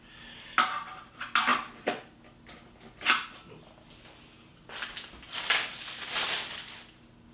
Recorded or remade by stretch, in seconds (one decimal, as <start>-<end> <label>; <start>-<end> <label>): 0.0-7.3 recorded